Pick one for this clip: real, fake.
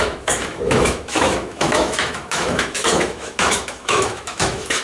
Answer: fake